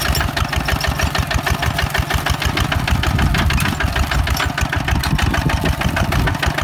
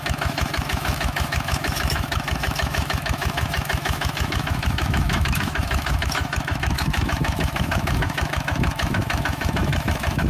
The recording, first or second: first